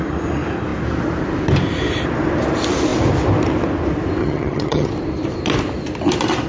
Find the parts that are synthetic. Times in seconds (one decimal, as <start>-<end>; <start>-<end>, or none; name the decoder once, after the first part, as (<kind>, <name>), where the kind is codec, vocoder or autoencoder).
4.2-4.9 (vocoder, HiFi-GAN)